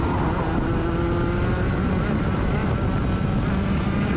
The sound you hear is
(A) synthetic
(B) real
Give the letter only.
B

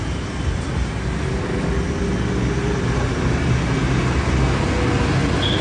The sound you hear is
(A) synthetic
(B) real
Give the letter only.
B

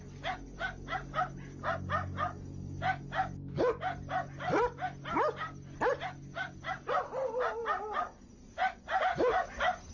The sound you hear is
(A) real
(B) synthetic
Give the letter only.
A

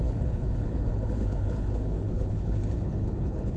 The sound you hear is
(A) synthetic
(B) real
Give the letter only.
A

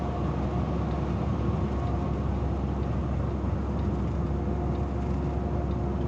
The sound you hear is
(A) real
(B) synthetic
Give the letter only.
A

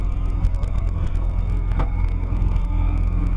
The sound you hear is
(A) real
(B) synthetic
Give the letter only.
B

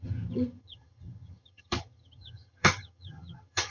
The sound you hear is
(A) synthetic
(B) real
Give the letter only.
A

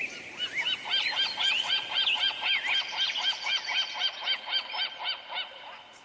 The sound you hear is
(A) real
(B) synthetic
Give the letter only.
A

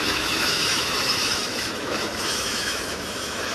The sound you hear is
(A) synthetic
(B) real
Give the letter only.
A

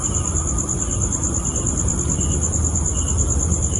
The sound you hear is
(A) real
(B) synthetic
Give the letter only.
A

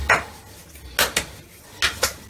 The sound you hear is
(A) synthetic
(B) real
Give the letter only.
B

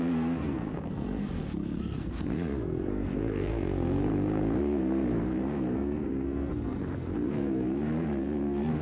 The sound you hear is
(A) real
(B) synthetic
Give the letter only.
B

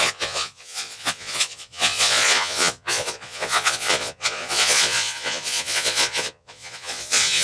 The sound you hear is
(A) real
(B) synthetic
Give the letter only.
B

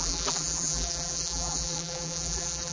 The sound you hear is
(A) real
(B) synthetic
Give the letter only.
B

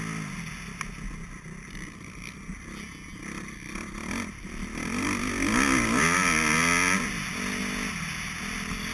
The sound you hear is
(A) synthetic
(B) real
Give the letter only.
B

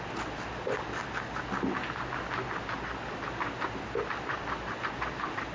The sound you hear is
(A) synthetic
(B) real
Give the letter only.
B